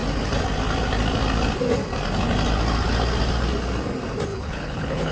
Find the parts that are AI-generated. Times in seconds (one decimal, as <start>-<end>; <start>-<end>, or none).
4.3-5.1